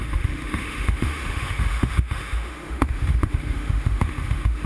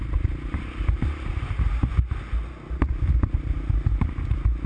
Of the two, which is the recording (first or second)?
second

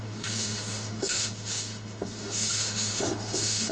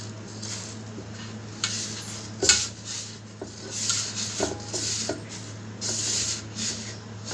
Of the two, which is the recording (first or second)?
second